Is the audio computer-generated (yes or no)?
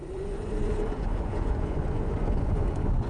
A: yes